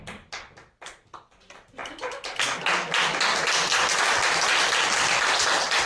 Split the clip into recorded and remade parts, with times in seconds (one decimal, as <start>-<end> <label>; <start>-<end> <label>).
0.0-5.9 recorded